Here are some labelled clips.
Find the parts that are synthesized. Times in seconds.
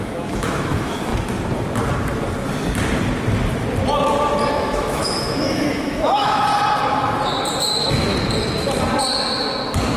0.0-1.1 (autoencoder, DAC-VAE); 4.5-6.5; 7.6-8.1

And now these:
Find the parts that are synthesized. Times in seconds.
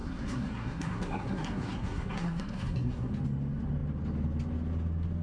0.0-3.1 (codec, SNAC)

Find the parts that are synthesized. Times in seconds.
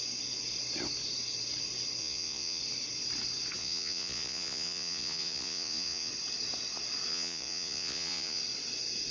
2.0-2.6 (vocoder, Vocos); 3.6-6.1; 7.1-8.4